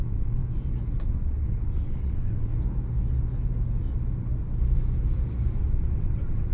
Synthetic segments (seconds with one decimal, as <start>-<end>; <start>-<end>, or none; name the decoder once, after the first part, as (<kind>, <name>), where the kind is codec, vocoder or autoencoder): 0.0-0.4 (vocoder, WaveNeXt); 1.0-2.5; 5.6-6.5